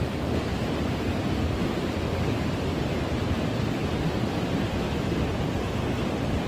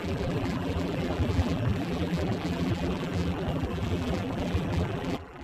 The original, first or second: first